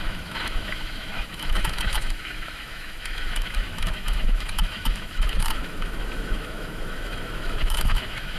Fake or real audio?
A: fake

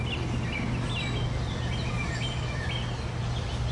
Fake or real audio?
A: real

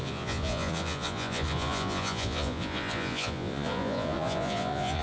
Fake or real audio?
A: fake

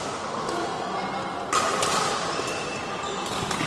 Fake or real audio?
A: real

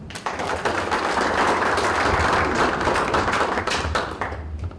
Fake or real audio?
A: fake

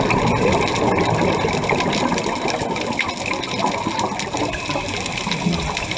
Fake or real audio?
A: real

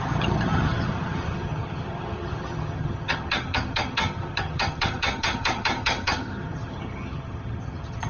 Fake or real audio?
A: fake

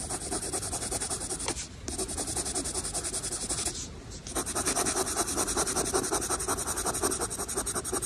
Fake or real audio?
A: real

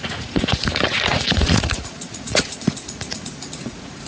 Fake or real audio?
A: fake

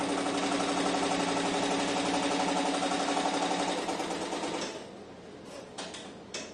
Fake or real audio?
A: real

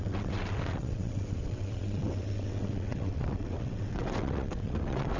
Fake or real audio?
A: fake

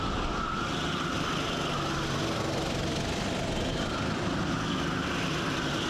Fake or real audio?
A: real